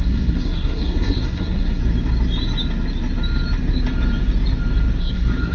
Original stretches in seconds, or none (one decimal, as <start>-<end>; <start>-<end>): 1.8-5.0